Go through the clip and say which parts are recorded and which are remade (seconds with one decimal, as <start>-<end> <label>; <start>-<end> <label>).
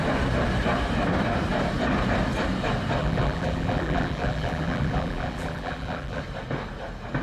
0.0-3.0 recorded; 3.0-6.2 remade; 6.2-7.2 recorded